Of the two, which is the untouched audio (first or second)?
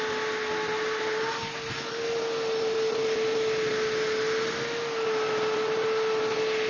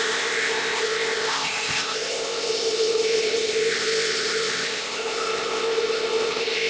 first